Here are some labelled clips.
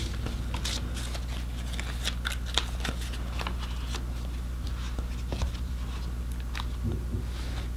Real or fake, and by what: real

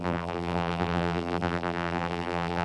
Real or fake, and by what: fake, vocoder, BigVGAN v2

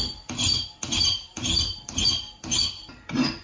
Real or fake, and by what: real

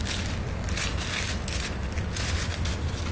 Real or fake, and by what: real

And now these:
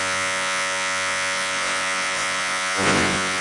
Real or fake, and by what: fake, vocoder, Vocos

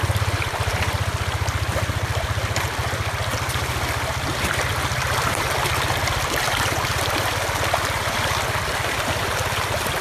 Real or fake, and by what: fake, vocoder, BigVGAN v2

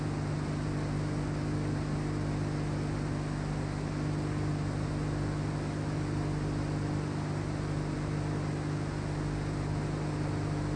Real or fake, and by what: real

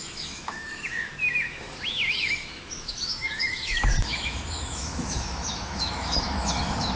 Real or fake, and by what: fake, autoencoder, DAC-VAE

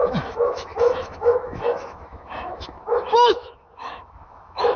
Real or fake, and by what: fake, autoencoder, DAC-VAE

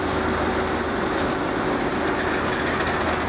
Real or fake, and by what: real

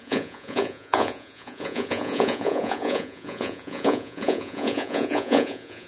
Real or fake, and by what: fake, vocoder, Vocos